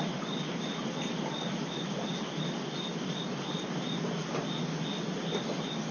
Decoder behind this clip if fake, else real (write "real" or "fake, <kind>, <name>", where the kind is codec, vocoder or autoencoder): real